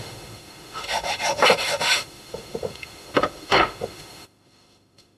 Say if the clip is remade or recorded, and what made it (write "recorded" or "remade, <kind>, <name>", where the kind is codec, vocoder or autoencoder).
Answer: remade, autoencoder, DAC-VAE